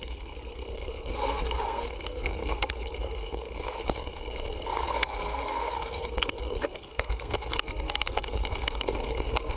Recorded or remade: remade